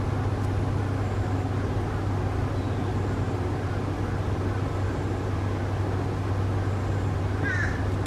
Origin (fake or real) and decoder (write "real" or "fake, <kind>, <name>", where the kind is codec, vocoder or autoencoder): real